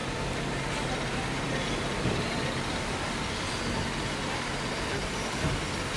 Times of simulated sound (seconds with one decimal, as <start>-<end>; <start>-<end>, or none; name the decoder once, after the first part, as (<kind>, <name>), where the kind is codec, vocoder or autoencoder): none